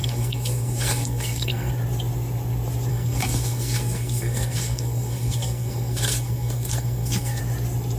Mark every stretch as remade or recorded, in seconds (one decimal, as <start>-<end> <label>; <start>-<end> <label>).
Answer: 0.0-1.7 remade; 1.7-2.9 recorded; 2.9-7.4 remade; 7.4-8.0 recorded